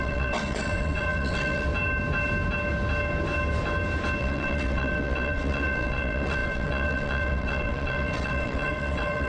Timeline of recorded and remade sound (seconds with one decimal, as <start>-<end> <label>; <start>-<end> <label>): 0.0-1.7 remade; 1.7-4.2 recorded; 4.2-9.3 remade